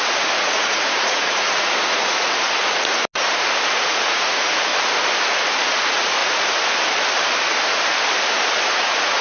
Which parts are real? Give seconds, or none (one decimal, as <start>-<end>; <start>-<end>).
2.9-3.7; 4.7-5.3; 6.2-8.6